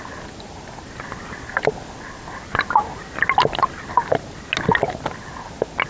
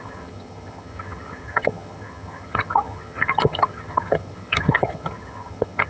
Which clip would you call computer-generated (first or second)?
second